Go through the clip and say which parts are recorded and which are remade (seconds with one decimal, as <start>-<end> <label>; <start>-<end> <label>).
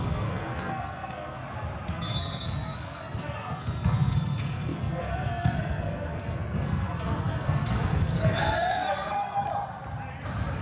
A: 0.0-1.4 remade; 1.4-1.9 recorded; 1.9-9.5 remade; 9.5-10.6 recorded